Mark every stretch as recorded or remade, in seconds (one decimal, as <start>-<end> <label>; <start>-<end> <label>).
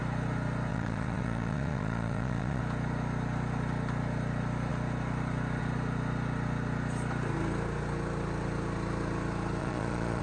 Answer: 0.0-0.7 recorded; 0.7-2.6 remade; 2.6-9.6 recorded; 9.6-10.2 remade